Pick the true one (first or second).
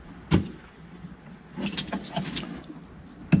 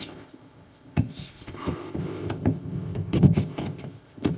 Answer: first